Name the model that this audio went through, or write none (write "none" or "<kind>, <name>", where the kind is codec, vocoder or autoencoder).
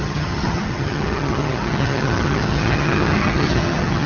vocoder, HiFi-GAN